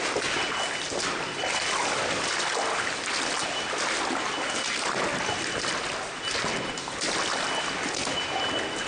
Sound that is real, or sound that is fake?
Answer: real